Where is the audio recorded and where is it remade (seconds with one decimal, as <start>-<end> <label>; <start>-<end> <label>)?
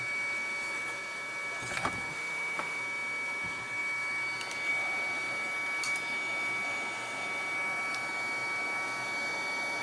0.0-2.1 recorded; 2.1-2.8 remade; 2.8-9.8 recorded